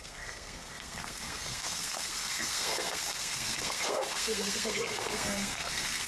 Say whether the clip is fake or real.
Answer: fake